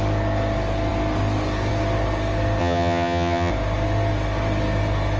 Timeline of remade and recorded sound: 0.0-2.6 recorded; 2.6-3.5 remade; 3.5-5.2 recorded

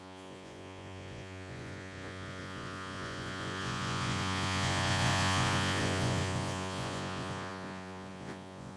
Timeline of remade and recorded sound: 0.0-8.8 remade